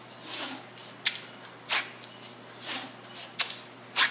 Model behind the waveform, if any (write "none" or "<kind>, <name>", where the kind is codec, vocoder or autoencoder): none